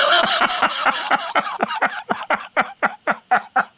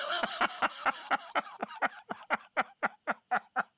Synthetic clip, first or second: first